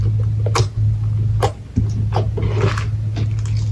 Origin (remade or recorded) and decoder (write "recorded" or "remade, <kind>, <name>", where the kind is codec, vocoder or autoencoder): recorded